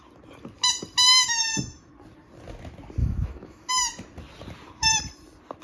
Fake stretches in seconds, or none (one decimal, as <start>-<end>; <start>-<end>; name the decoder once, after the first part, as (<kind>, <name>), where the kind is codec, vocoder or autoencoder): 1.1-1.9 (autoencoder, DAC-VAE); 3.0-3.7